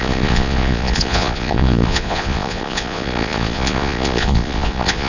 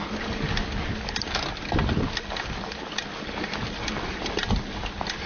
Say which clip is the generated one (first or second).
first